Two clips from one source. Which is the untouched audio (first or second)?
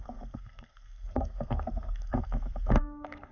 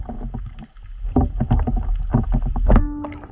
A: second